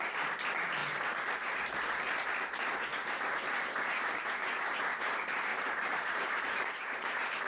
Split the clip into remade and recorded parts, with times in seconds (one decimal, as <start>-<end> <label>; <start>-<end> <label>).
0.0-5.5 recorded; 5.5-7.5 remade